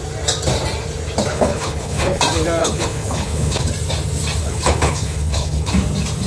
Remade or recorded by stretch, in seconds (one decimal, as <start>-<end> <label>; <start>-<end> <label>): 0.0-1.3 recorded; 1.3-2.2 remade; 2.2-2.6 recorded; 2.6-3.7 remade; 3.7-4.4 recorded; 4.4-5.7 remade; 5.7-6.3 recorded